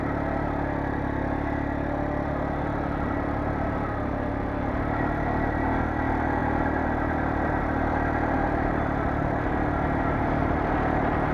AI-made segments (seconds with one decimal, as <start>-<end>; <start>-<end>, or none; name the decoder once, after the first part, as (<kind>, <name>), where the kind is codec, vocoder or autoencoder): none